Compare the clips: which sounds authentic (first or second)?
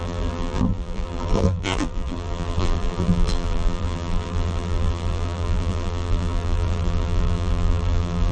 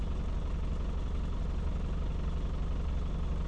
second